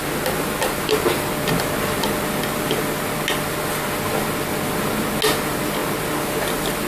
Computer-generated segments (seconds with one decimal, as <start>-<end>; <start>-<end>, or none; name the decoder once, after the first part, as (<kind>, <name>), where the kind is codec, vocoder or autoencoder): none